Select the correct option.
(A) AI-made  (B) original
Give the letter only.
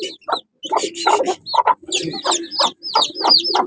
B